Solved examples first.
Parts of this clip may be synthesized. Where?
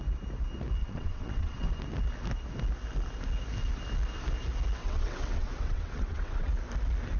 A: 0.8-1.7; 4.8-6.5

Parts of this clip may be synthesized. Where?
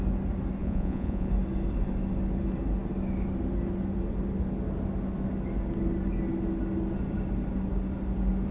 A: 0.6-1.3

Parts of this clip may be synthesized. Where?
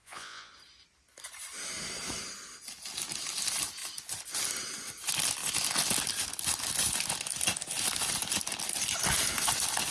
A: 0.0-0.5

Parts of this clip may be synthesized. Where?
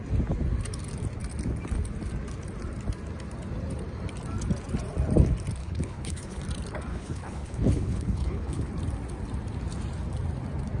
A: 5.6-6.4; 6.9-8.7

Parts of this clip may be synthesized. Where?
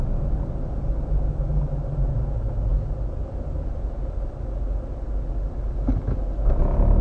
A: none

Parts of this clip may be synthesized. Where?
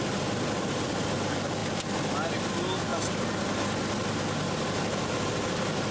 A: none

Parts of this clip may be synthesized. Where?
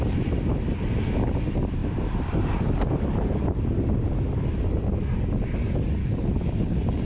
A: 6.0-7.0